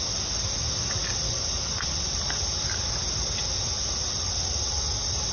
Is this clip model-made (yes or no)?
no